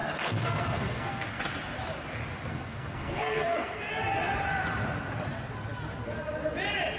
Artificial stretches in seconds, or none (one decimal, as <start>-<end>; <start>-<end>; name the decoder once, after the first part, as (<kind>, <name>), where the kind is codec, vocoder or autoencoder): 0.0-1.4 (codec, SNAC); 2.5-3.9